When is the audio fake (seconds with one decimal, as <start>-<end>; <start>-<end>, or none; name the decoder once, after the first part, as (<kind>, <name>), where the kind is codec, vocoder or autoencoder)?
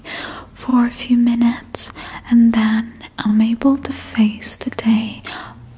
4.3-5.8 (vocoder, Vocos)